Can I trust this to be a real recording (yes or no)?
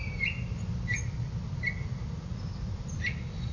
yes